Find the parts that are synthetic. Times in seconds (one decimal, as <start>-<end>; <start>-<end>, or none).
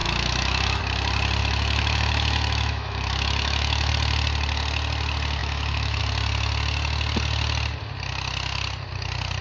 0.0-0.8; 1.4-3.9; 5.4-6.0